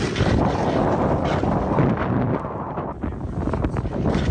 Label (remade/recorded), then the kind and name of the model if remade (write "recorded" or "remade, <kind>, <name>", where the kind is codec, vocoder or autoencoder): recorded